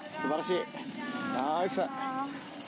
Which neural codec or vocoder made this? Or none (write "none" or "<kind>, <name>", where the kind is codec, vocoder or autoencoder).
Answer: none